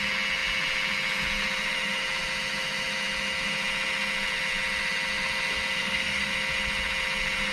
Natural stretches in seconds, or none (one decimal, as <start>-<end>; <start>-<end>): 0.0-5.8; 6.3-7.5

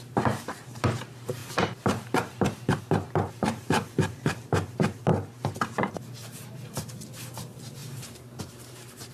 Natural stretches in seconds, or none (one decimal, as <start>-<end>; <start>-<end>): 5.1-5.9